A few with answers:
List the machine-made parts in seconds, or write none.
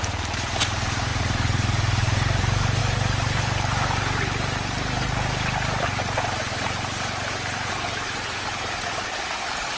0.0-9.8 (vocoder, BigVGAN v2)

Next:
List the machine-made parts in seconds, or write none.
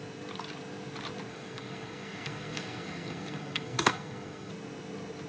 1.3-4.5 (codec, SNAC)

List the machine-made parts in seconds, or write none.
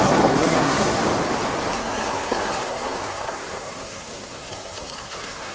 0.0-1.0 (codec, SNAC); 1.7-5.5